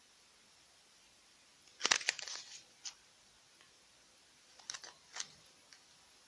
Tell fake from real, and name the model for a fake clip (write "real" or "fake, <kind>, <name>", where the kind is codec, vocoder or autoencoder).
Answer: real